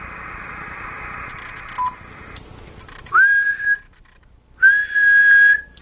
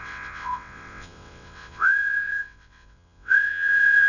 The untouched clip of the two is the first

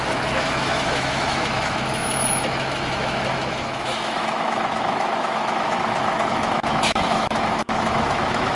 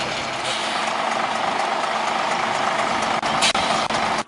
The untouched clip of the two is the second